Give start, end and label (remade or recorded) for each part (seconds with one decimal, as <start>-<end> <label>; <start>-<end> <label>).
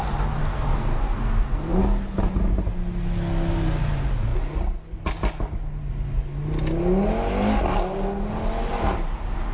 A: 0.0-0.4 recorded; 0.4-1.8 remade; 1.8-9.5 recorded